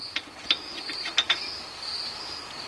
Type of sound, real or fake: real